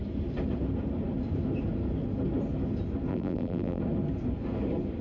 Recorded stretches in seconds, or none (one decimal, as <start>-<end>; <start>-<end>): 0.0-3.1; 3.8-5.0